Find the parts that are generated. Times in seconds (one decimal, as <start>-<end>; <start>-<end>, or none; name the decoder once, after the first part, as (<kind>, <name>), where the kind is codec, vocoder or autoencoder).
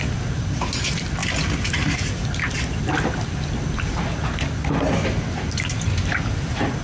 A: 1.2-4.0 (vocoder, BigVGAN v2)